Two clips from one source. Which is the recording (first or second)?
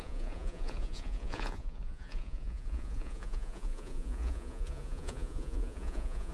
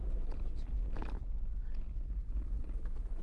second